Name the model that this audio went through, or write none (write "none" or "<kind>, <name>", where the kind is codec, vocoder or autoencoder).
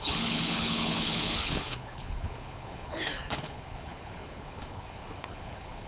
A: codec, HILCodec